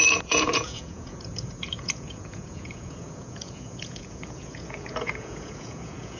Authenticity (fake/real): fake